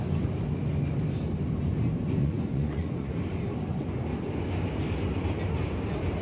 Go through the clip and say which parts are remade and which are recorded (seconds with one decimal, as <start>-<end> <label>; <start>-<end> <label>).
0.0-2.2 recorded; 2.2-3.1 remade; 3.1-6.2 recorded